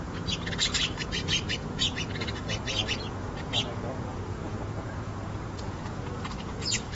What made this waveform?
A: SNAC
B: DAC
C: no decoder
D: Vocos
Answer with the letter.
D